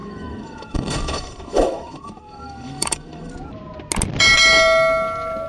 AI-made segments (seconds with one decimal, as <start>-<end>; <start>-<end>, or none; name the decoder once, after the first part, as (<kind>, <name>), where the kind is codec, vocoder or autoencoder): 0.0-3.3 (autoencoder, DAC-VAE)